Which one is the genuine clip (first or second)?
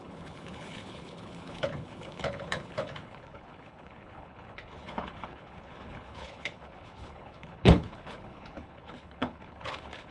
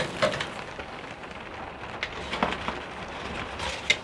second